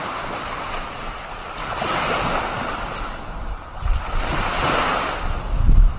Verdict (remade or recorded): recorded